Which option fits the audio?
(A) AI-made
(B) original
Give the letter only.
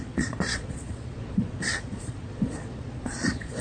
A